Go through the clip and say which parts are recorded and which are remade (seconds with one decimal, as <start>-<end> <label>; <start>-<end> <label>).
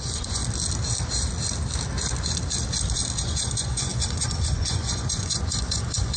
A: 0.0-0.4 remade; 0.4-3.2 recorded; 3.2-6.2 remade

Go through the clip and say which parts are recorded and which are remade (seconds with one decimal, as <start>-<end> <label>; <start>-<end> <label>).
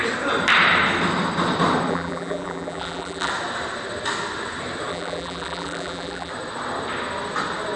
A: 0.0-1.9 recorded; 1.9-3.3 remade; 3.3-4.9 recorded; 4.9-6.3 remade; 6.3-7.8 recorded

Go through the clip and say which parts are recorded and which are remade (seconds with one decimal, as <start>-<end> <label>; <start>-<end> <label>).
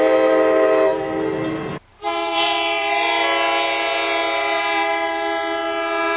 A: 0.0-1.9 recorded; 1.9-3.1 remade; 3.1-6.2 recorded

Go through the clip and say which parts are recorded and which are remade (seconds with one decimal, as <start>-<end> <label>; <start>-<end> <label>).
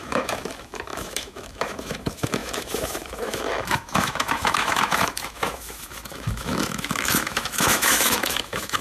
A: 0.0-8.8 remade